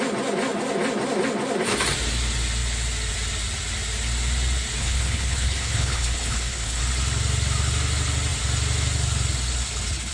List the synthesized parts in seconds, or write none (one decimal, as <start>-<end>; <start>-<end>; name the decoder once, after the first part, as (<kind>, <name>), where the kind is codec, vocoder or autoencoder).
4.8-6.8 (codec, HILCodec)